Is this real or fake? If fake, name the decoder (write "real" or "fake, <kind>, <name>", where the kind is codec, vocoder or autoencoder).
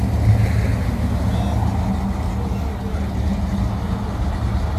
real